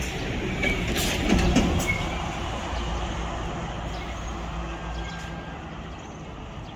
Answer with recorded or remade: recorded